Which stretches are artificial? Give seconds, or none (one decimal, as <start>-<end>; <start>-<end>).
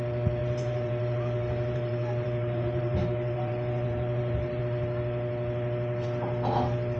0.4-4.6